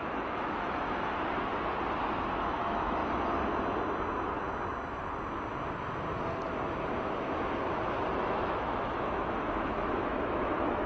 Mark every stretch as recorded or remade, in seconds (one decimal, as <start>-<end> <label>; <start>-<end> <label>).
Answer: 0.0-1.5 remade; 1.5-2.6 recorded; 2.6-3.0 remade; 3.0-8.1 recorded; 8.1-10.9 remade